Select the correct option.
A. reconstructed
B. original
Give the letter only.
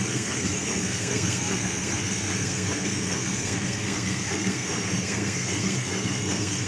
A